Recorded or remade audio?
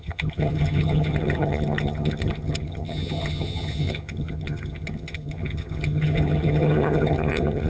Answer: remade